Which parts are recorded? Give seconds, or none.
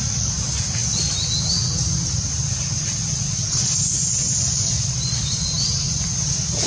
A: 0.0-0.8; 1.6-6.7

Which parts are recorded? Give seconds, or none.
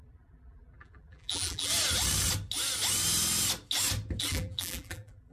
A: 1.7-4.2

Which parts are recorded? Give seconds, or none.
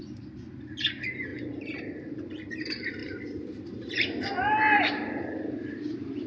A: 0.0-1.3; 2.5-3.0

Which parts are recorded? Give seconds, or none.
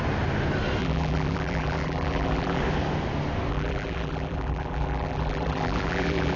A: 0.0-0.8; 2.6-3.5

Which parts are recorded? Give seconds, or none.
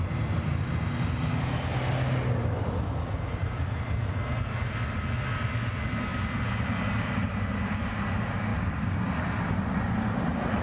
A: 0.0-3.4; 4.4-6.1; 7.2-8.5; 9.3-10.6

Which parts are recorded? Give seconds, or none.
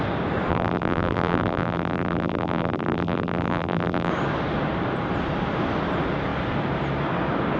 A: 0.0-0.5; 4.1-7.6